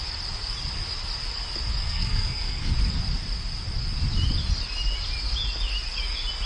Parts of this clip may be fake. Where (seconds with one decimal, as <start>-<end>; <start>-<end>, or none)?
1.8-2.7